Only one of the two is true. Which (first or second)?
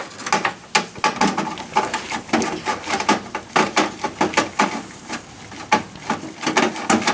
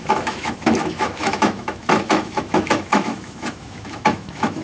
first